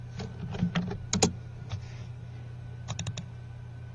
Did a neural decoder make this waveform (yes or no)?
no